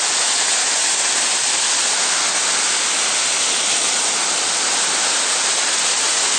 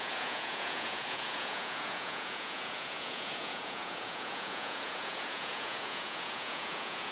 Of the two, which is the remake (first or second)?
second